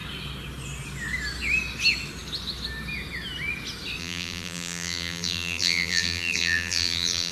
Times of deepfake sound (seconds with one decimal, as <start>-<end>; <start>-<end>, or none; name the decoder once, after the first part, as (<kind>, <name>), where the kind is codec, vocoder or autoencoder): 4.0-7.3 (vocoder, BigVGAN v2)